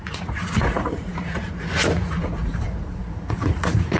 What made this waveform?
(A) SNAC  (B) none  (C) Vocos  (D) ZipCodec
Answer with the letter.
C